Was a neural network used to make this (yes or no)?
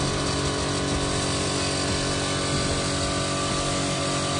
no